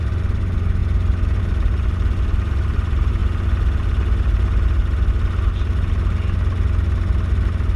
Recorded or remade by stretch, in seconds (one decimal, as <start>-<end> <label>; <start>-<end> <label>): 0.0-0.8 remade; 0.8-1.4 recorded; 1.4-3.2 remade; 3.2-7.8 recorded